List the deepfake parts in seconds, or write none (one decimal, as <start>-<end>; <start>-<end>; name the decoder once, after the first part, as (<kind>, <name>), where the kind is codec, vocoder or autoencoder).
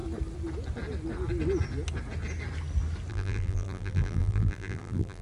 3.1-5.2 (vocoder, BigVGAN v2)